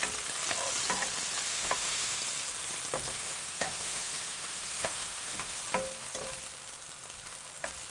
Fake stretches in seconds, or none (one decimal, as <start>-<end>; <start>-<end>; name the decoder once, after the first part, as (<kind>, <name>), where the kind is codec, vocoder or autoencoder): 1.5-2.2 (autoencoder, DAC-VAE); 3.1-5.6